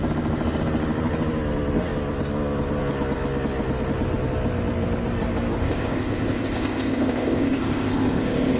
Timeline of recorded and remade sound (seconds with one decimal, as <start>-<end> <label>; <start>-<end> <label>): 0.0-5.6 recorded; 5.6-8.6 remade